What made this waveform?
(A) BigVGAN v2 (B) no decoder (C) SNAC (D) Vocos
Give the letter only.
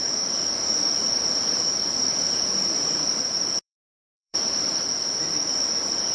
A